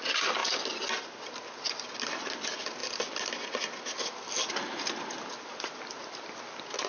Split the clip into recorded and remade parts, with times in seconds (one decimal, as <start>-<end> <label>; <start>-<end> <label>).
0.0-6.9 recorded